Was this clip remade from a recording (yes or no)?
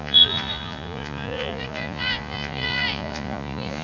yes